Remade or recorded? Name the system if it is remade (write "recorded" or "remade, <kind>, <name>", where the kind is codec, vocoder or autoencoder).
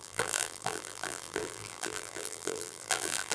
remade, vocoder, BigVGAN v2